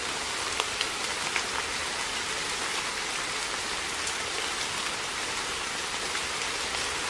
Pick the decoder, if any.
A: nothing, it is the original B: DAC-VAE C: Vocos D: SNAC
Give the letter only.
A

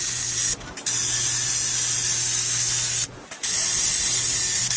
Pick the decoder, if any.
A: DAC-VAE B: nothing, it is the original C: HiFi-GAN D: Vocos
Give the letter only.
B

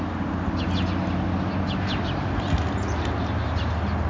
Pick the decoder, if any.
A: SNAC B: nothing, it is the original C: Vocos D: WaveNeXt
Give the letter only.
B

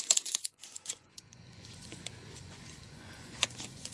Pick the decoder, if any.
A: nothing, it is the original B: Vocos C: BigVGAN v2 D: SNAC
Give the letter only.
B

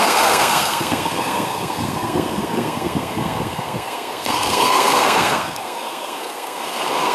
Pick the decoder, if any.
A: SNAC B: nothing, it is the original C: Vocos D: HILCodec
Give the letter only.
A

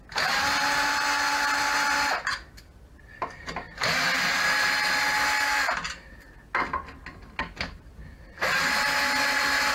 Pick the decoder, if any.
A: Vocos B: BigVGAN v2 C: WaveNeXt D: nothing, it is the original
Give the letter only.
D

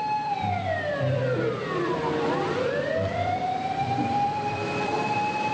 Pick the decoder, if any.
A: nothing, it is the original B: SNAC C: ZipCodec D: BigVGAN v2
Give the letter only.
D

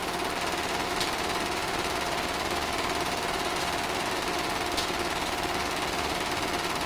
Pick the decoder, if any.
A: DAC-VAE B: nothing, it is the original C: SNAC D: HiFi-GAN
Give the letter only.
B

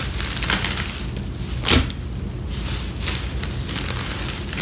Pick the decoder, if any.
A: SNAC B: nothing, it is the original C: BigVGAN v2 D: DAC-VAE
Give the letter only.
B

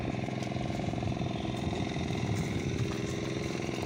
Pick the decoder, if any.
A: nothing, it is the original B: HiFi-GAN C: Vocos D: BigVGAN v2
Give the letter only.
D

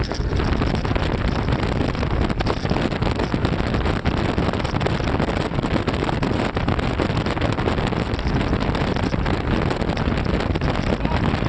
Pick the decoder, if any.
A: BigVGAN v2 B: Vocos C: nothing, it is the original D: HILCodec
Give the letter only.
C